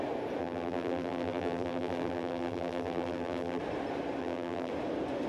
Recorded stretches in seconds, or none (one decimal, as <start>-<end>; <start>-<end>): 0.0-0.4; 3.6-4.2; 4.7-5.3